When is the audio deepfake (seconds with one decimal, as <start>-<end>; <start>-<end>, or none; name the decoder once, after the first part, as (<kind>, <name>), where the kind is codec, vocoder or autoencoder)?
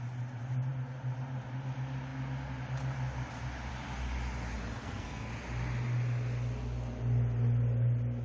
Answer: 4.8-5.3 (codec, SNAC)